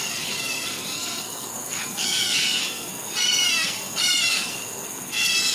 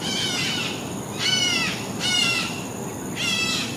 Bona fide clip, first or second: second